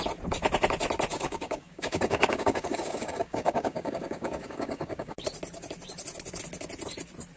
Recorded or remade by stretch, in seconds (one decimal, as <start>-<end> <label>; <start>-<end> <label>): 0.0-1.1 recorded; 1.1-5.2 remade; 5.2-7.4 recorded